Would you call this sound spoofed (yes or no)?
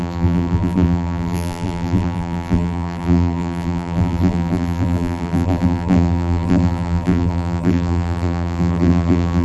yes